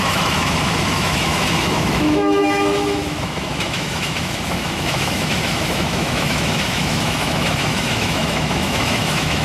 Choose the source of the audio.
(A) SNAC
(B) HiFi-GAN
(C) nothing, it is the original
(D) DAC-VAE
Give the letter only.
D